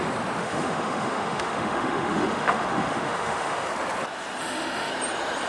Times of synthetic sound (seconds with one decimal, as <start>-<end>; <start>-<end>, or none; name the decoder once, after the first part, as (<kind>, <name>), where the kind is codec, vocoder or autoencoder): 0.4-3.7 (autoencoder, DAC-VAE); 4.4-4.9